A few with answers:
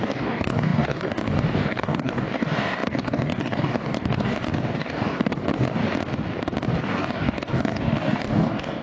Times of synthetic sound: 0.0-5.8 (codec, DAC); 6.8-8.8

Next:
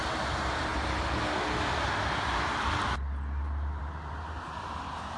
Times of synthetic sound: none

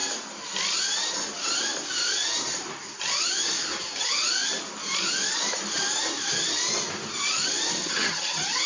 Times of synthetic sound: 7.8-8.7 (vocoder, HiFi-GAN)

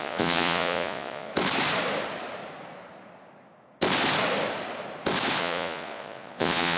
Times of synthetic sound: 0.0-1.3 (vocoder, Vocos); 5.4-6.8